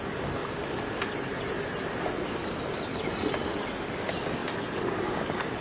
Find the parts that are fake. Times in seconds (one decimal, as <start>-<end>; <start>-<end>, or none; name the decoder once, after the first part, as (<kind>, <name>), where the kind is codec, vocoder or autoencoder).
2.9-3.4 (vocoder, Vocos)